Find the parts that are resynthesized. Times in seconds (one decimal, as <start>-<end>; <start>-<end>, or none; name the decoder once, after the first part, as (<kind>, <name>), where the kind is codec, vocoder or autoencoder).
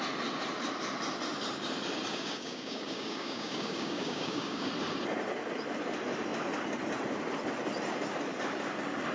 2.1-4.7 (codec, DAC)